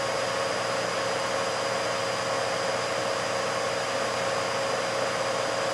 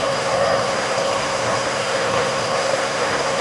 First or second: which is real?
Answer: first